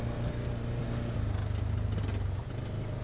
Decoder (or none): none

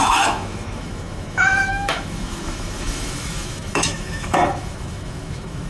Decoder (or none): autoencoder, DAC-VAE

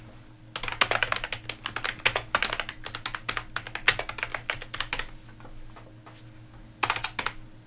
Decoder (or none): none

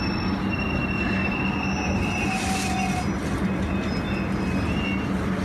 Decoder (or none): none